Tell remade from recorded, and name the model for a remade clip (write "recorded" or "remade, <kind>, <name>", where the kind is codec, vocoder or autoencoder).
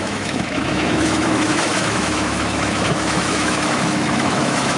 remade, autoencoder, DAC-VAE